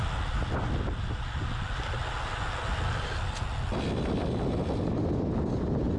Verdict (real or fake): real